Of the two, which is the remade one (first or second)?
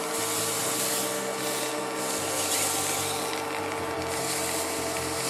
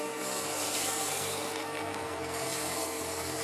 second